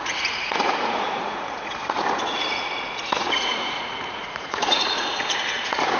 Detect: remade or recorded remade